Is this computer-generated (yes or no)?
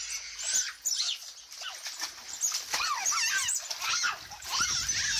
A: no